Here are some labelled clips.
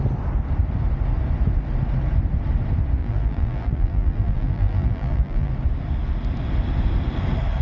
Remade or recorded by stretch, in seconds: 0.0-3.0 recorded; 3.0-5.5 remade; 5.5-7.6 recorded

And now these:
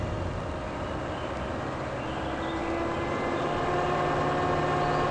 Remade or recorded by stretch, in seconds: 0.0-5.1 recorded

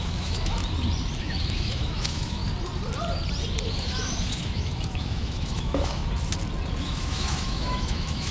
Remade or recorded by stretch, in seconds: 0.0-0.6 remade; 0.6-1.2 recorded; 1.2-2.4 remade; 2.4-3.7 recorded; 3.7-6.0 remade; 6.0-6.8 recorded; 6.8-8.3 remade

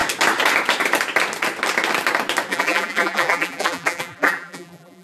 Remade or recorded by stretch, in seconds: 0.0-2.5 recorded; 2.5-5.0 remade